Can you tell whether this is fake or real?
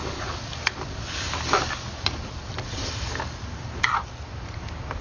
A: real